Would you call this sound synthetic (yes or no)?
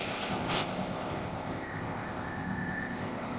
yes